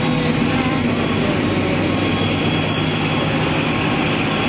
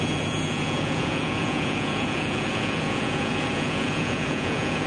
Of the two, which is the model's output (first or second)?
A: second